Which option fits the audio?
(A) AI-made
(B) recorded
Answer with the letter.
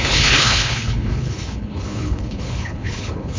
A